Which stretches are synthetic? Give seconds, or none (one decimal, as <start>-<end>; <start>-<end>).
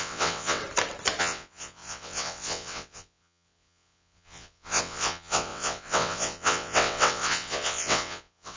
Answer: 0.0-0.6; 1.2-8.6